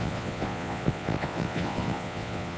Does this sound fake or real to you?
fake